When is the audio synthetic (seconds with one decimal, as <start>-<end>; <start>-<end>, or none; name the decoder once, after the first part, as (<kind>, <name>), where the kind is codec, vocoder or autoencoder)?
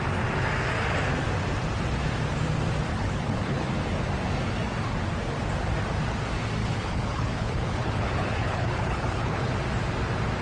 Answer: 2.9-3.7 (codec, HILCodec); 6.6-9.5